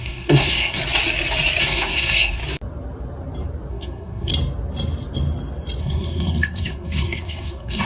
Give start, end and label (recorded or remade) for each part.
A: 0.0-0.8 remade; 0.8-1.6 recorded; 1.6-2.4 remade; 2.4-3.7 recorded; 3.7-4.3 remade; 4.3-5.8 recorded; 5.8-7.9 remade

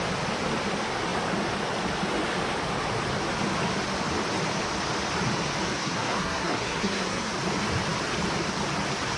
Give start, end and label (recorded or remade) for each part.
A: 0.0-5.8 recorded; 5.8-7.3 remade; 7.3-9.2 recorded

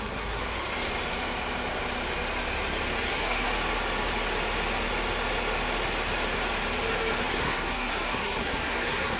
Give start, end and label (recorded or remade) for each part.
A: 0.0-0.4 remade; 0.4-3.1 recorded; 3.1-3.5 remade; 3.5-7.2 recorded; 7.2-9.2 remade